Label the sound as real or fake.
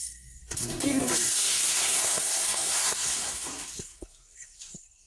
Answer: fake